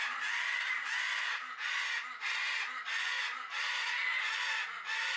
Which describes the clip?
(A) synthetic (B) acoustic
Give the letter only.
B